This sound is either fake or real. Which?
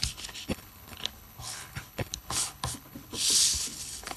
fake